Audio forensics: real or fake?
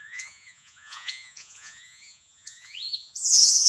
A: fake